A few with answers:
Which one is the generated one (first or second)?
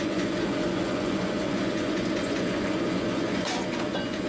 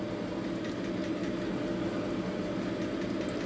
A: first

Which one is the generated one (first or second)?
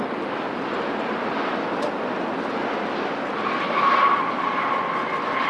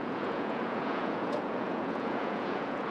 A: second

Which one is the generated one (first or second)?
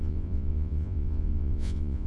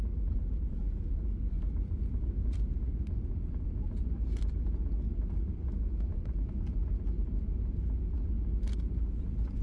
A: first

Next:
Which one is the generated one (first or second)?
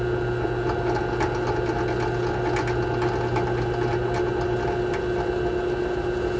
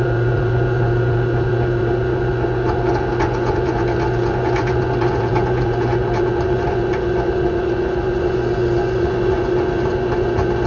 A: second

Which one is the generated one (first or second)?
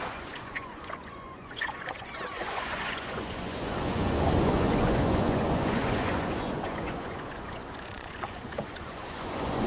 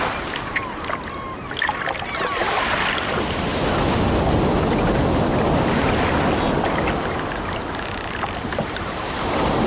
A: first